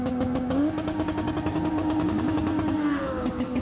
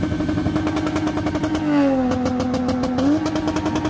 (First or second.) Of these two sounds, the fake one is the first